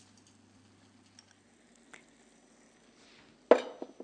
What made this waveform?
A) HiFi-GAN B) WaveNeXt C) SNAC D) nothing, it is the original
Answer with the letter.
D